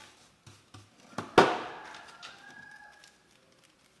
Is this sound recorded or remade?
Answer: recorded